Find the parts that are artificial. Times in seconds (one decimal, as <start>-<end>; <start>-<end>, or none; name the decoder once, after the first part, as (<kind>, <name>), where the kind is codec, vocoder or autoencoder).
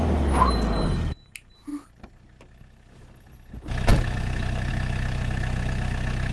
none